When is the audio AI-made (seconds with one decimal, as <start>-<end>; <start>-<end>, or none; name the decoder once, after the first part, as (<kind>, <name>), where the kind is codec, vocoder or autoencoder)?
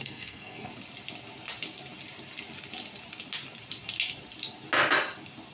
0.0-0.7 (codec, SNAC)